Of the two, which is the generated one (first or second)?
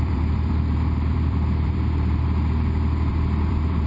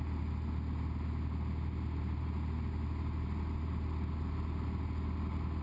first